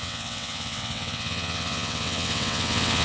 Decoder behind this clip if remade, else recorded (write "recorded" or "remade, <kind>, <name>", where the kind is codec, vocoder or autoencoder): remade, vocoder, WaveNeXt